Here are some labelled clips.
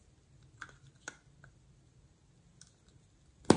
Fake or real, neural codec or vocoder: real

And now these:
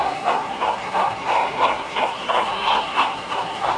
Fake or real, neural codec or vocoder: fake, codec, SNAC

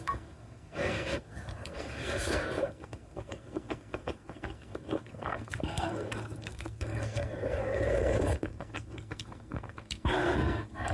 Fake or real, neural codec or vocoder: fake, codec, SNAC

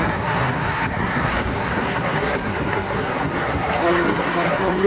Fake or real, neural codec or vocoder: fake, codec, SNAC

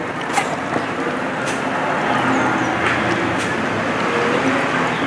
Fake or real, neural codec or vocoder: real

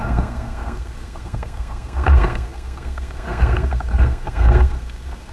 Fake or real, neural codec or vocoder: fake, codec, SNAC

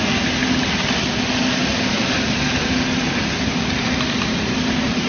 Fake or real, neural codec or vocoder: real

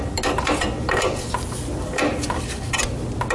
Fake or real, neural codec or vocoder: real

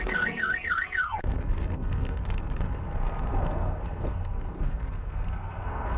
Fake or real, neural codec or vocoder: fake, codec, SNAC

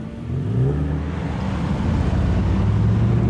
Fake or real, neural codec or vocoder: real